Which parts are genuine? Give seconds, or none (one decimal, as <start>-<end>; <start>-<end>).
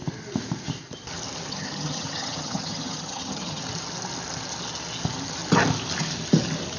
0.0-1.5; 3.6-6.8